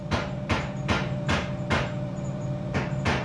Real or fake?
fake